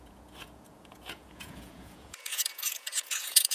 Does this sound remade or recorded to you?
remade